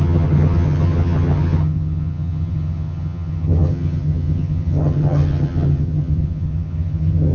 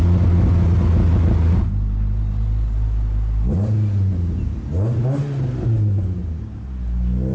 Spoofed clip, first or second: first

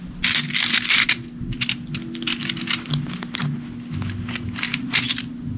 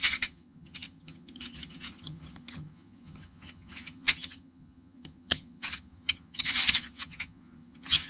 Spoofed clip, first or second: second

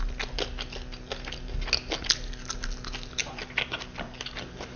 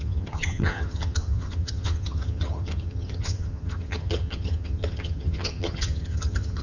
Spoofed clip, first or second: second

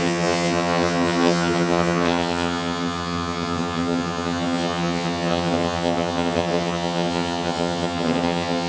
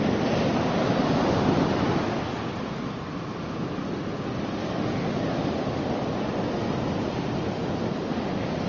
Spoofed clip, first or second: first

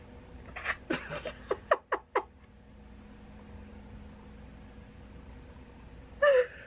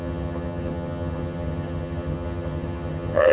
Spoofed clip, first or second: second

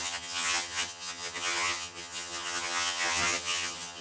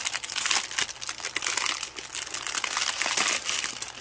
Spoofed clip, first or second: first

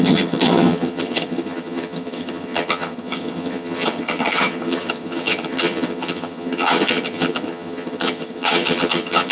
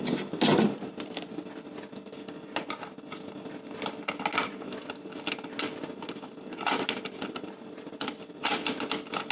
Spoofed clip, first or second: first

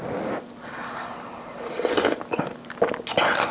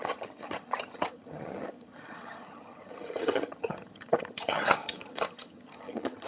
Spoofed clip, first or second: second